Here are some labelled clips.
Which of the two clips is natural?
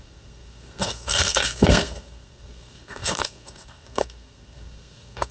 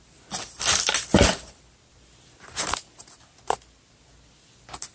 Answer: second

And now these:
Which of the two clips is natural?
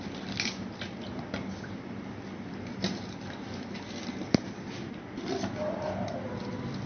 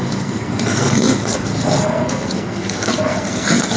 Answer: first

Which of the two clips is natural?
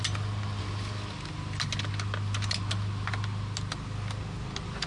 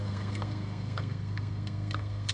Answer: first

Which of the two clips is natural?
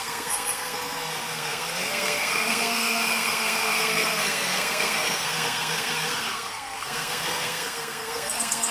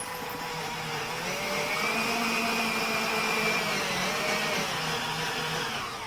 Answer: second